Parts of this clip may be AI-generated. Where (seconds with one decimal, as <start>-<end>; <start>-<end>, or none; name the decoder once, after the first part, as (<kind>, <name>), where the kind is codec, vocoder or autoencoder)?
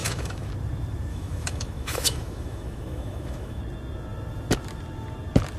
0.0-0.5 (autoencoder, DAC-VAE); 1.1-3.6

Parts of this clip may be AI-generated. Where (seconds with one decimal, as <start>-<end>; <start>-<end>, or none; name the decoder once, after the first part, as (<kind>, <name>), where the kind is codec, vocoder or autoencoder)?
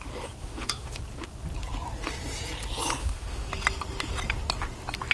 0.4-1.0 (autoencoder, DAC-VAE); 3.0-3.5